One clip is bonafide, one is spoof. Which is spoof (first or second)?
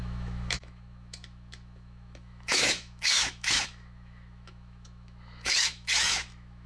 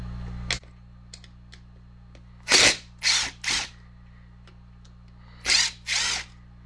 first